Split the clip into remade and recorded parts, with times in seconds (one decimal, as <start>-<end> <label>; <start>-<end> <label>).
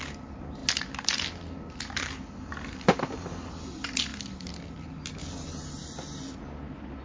0.0-7.0 recorded